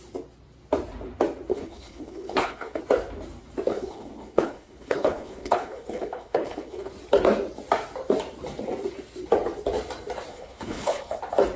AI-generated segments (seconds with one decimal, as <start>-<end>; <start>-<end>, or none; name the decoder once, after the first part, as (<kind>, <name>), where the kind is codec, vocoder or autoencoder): 1.5-2.8 (codec, HILCodec); 3.7-6.9; 10.3-11.2